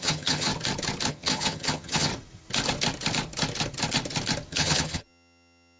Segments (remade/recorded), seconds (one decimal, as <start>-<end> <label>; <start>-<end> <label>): 0.0-0.5 remade; 0.5-1.1 recorded; 1.1-2.1 remade; 2.1-4.5 recorded; 4.5-5.8 remade